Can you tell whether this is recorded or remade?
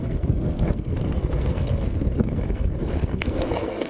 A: remade